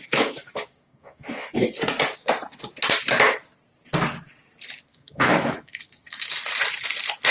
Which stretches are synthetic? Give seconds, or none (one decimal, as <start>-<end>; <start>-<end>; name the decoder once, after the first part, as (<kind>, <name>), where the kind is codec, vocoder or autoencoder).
0.0-1.7 (autoencoder, DAC-VAE); 4.9-6.3